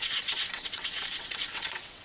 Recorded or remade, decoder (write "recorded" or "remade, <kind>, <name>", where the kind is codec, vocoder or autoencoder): remade, vocoder, WaveNeXt